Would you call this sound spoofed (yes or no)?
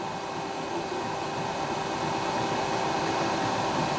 no